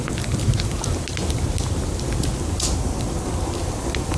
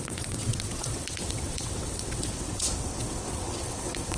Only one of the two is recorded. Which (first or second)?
first